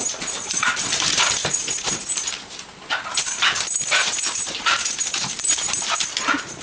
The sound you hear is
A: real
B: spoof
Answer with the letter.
B